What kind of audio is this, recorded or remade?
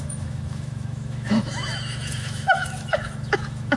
remade